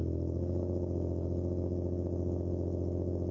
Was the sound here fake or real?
real